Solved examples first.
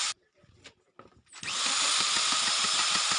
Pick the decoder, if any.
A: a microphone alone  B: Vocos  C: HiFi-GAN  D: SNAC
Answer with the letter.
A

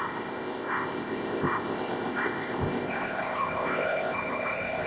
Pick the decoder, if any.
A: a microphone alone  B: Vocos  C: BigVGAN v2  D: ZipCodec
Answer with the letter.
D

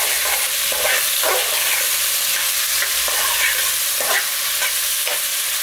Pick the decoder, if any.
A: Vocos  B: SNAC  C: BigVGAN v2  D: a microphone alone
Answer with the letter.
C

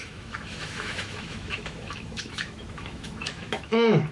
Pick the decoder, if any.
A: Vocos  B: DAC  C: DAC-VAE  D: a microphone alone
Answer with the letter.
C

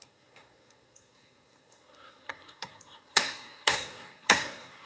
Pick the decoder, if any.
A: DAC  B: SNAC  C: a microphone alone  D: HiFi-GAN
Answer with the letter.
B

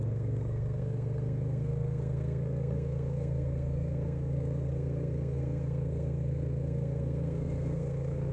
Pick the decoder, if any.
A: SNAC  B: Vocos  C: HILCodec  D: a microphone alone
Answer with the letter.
A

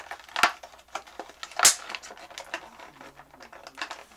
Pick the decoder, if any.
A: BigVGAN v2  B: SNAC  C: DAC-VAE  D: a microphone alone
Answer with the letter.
D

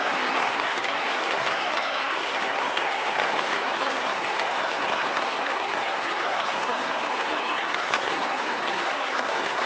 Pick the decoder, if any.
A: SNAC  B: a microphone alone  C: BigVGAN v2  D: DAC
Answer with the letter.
A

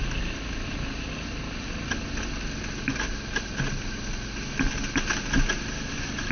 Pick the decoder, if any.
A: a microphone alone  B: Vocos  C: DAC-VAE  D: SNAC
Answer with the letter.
A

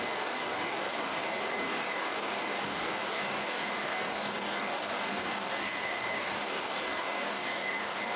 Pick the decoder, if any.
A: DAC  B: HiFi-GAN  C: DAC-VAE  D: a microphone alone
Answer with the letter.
A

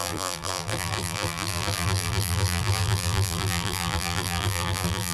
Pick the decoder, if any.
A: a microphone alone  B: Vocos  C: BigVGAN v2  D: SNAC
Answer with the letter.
C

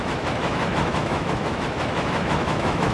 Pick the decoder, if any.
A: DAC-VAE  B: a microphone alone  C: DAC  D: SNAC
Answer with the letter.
A